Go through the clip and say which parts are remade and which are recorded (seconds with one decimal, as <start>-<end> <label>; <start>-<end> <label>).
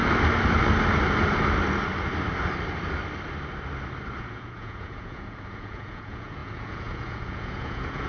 0.0-4.2 recorded; 4.2-8.1 remade